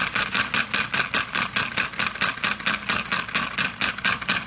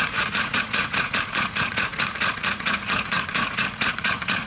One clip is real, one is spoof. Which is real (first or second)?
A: first